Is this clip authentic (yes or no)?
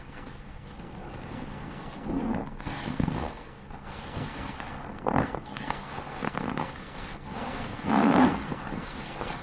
no